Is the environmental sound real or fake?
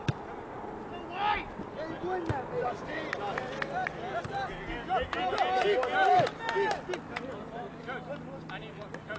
real